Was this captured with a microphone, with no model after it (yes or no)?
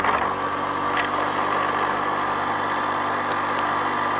yes